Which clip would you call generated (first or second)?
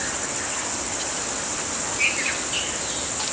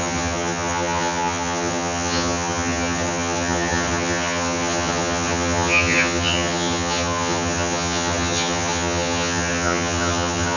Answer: second